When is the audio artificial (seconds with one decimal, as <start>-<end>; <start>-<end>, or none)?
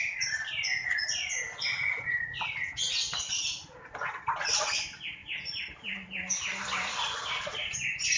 none